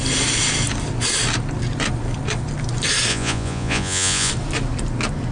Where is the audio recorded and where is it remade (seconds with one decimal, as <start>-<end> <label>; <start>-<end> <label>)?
0.0-3.1 recorded; 3.1-4.3 remade; 4.3-5.3 recorded